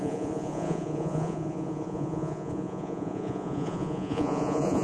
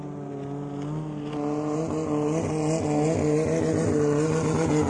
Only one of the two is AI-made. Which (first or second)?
first